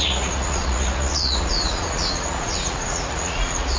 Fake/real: fake